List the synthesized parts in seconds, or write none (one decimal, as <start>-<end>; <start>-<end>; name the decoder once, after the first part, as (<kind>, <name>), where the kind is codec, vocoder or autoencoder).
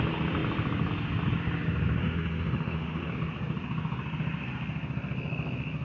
2.0-3.1 (autoencoder, DAC-VAE)